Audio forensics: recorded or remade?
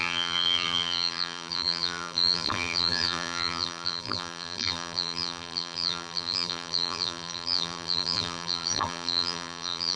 remade